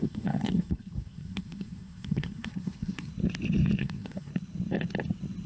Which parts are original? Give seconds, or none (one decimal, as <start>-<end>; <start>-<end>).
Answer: 3.1-3.8; 4.3-5.5